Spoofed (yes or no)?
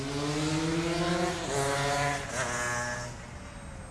no